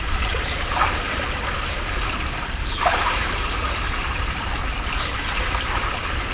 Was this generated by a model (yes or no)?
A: yes